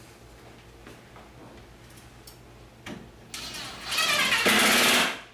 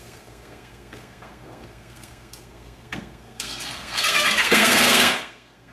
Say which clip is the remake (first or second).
second